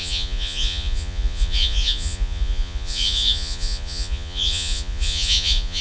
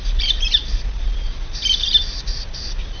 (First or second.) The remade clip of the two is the first